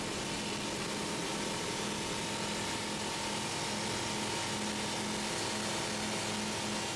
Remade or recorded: recorded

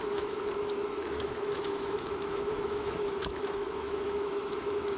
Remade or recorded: remade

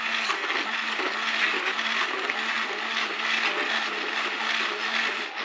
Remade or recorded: recorded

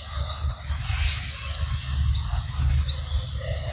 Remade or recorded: recorded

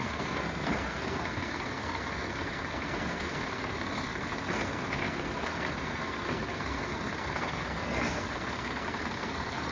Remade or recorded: remade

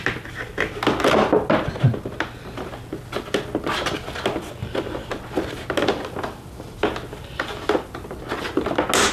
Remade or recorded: recorded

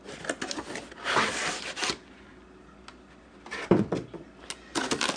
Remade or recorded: recorded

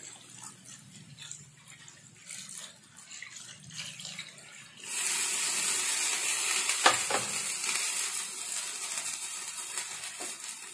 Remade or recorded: recorded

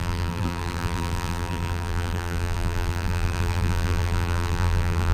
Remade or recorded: remade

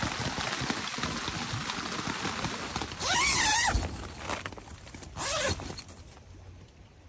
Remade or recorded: recorded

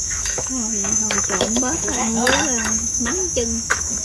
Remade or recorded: remade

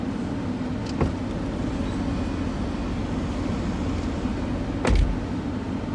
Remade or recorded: recorded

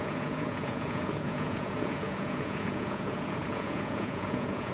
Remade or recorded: remade